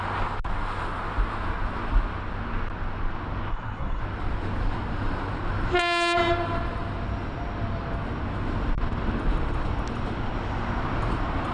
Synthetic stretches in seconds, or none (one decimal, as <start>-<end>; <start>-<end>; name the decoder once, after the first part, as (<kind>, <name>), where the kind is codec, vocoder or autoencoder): 3.5-4.0 (codec, SNAC)